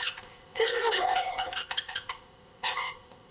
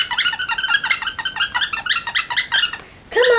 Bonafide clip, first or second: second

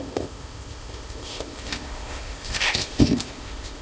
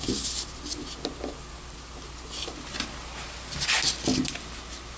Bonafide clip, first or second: second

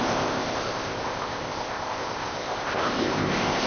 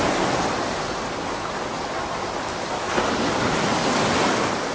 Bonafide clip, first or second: second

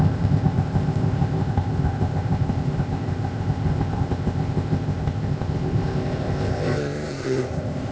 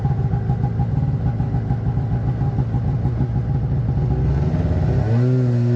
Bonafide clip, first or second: second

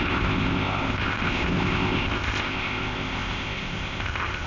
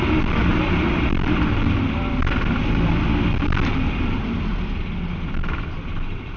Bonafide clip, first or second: second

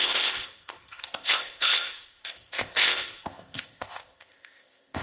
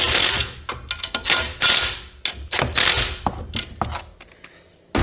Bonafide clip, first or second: second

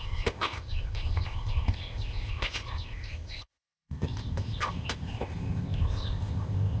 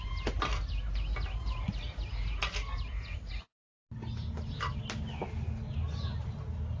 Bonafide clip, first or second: second